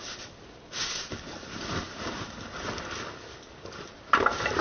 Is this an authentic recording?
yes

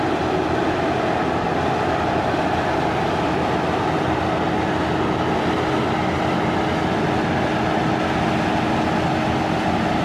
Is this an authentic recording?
yes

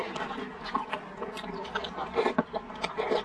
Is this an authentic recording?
yes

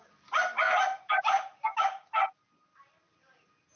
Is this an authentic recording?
yes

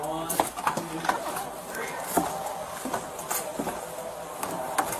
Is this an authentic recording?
yes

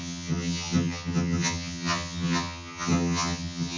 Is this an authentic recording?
no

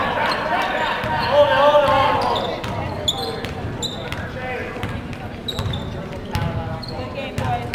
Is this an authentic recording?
yes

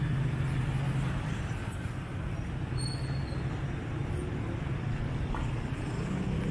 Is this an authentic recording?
yes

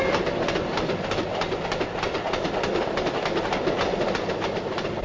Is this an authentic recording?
yes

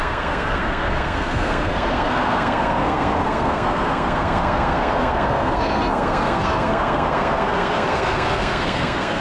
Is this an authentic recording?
no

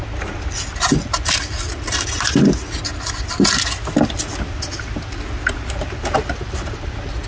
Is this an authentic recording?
yes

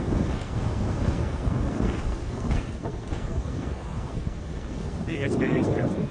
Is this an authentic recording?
no